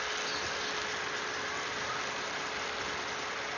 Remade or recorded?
recorded